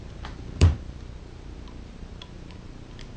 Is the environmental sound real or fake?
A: fake